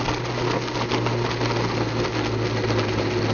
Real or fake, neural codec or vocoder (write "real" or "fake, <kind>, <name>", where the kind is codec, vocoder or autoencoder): real